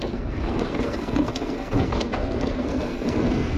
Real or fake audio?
fake